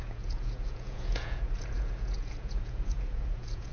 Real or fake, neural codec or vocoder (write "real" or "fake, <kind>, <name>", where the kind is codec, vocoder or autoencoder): fake, vocoder, Vocos